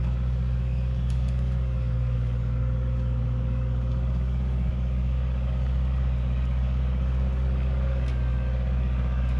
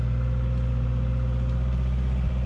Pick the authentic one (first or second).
second